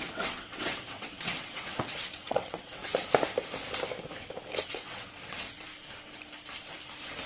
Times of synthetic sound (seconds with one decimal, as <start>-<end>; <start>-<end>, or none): 0.0-2.8; 4.6-5.7